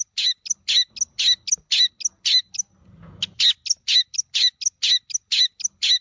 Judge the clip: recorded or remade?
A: recorded